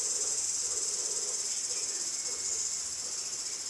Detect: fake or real real